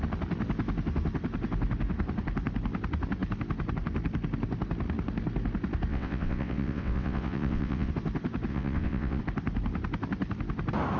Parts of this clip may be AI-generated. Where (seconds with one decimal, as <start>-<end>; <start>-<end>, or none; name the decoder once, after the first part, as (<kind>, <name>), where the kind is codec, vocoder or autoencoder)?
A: 5.9-7.9 (vocoder, WaveNeXt); 8.5-9.2